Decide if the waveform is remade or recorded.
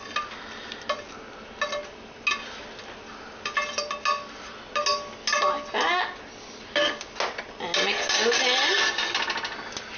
recorded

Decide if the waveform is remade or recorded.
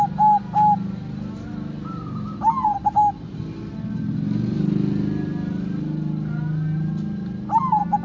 recorded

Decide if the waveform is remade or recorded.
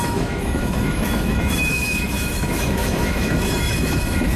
remade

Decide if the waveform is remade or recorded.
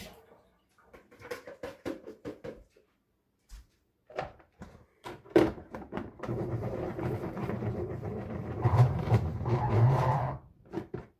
remade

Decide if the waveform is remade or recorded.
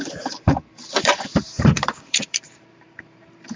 remade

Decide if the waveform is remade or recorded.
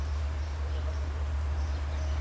recorded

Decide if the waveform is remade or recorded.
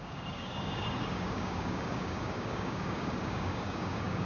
remade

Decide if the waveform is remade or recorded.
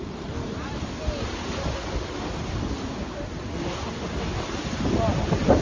recorded